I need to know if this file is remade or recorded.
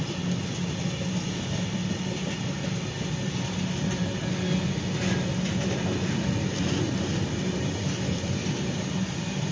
recorded